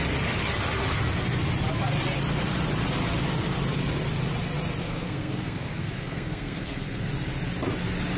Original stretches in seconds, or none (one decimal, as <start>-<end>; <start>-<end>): 0.0-4.8; 7.1-8.2

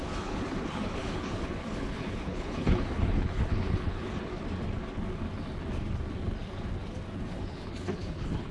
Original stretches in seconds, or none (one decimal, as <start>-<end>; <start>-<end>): 4.3-7.3

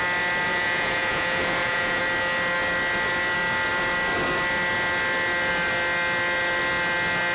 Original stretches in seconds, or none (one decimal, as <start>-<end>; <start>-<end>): 0.0-0.5; 2.0-7.3

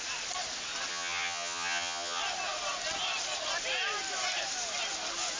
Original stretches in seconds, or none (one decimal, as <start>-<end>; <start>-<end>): 0.0-0.9; 2.2-5.4